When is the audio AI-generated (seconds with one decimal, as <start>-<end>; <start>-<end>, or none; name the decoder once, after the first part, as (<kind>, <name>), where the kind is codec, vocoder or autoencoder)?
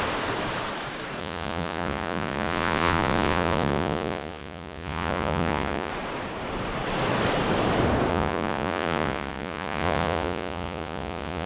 1.2-5.9 (vocoder, Vocos); 8.1-11.5